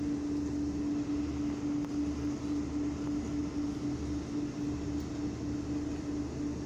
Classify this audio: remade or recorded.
recorded